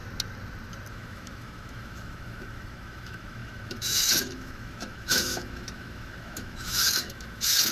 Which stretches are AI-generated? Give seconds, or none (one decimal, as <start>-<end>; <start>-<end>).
0.9-7.7